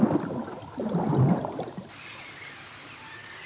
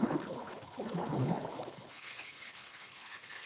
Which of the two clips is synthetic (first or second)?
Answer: second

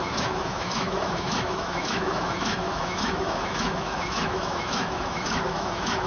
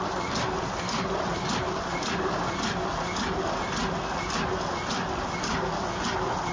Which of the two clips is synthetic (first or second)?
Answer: first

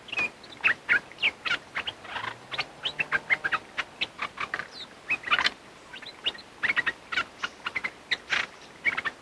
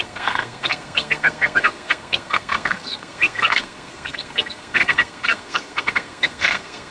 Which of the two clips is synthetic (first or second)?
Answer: second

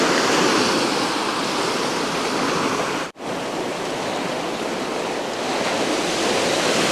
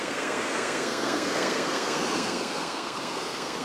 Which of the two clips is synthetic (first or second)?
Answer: second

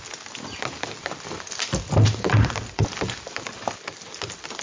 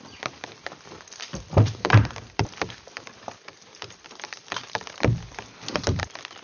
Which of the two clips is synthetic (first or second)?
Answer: second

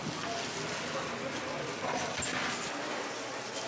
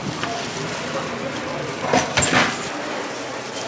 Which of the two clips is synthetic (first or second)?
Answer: second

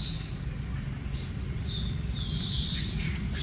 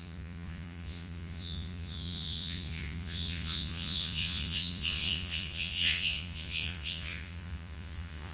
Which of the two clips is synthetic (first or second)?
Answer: second